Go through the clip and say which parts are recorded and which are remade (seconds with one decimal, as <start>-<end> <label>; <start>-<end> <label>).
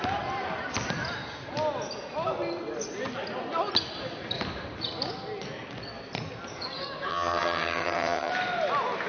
0.0-7.1 recorded; 7.1-8.3 remade; 8.3-9.1 recorded